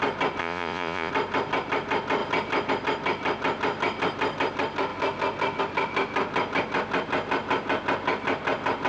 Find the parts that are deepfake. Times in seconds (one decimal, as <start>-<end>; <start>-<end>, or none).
0.4-1.1